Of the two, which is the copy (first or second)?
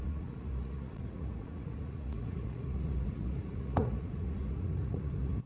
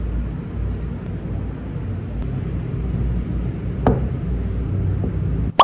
first